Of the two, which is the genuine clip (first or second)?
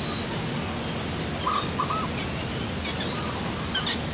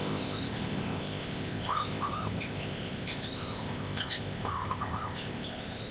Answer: first